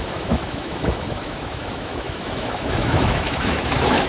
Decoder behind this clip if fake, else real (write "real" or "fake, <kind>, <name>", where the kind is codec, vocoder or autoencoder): fake, autoencoder, DAC-VAE